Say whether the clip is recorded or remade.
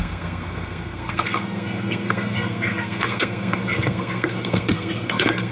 remade